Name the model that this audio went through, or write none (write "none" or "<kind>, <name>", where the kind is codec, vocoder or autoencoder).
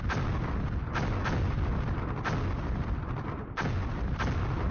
none